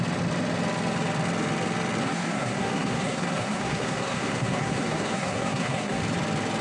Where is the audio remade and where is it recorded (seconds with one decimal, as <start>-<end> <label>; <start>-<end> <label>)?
0.0-2.0 recorded; 2.0-6.0 remade; 6.0-6.6 recorded